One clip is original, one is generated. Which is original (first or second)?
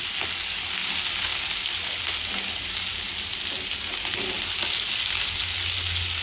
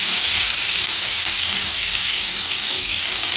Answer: first